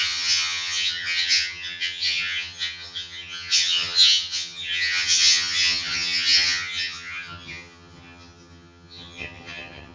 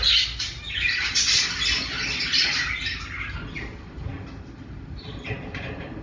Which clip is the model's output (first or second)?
first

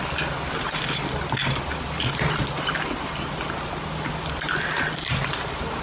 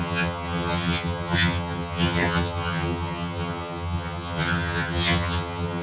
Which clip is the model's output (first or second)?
second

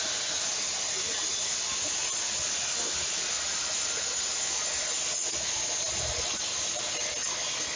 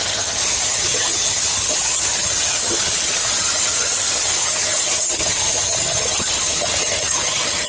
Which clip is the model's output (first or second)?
second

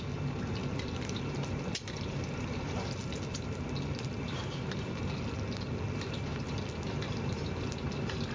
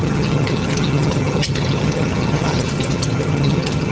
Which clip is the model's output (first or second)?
second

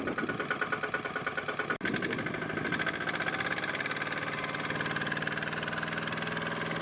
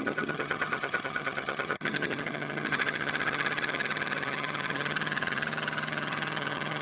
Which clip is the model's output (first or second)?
second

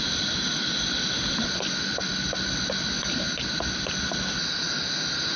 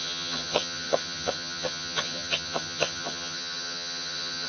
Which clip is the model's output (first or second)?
second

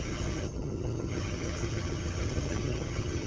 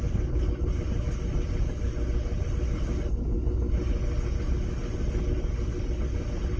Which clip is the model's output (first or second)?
first